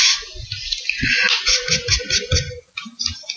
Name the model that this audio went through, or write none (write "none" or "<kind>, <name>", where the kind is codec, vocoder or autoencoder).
none